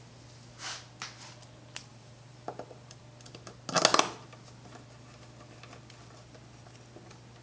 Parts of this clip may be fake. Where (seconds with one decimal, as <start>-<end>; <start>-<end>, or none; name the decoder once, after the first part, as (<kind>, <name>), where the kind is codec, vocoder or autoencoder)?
1.9-3.0 (vocoder, BigVGAN v2)